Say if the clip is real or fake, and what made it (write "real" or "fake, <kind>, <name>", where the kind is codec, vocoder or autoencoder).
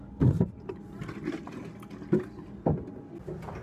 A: real